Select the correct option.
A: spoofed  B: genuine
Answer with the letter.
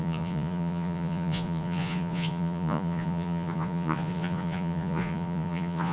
A